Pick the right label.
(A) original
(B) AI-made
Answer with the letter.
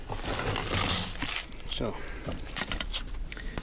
A